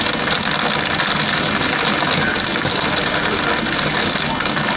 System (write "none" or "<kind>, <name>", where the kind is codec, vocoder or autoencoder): none